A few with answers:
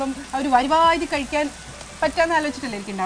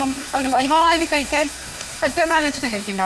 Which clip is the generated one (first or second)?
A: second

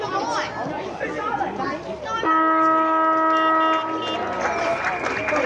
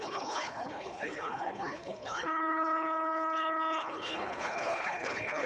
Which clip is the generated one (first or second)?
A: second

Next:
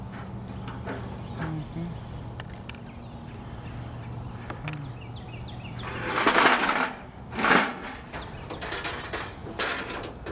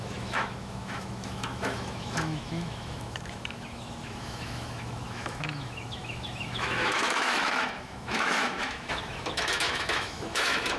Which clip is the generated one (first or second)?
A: second